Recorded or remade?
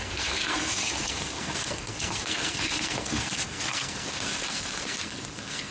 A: remade